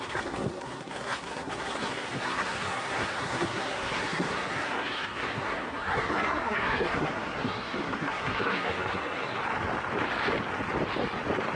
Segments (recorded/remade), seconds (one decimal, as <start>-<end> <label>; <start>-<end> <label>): 0.0-9.4 remade; 9.4-11.6 recorded